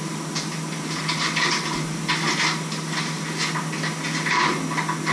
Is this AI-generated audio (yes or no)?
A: no